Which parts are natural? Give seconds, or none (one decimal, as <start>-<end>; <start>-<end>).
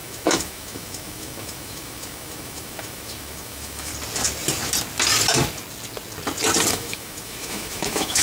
3.9-6.7